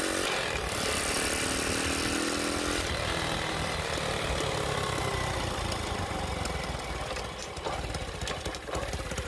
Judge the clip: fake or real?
real